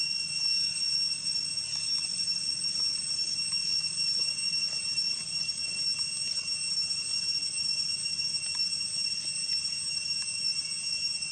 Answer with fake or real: real